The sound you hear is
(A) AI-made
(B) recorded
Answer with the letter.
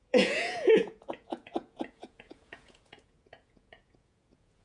A